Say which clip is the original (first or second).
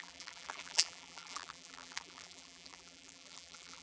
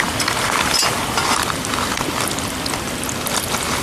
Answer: second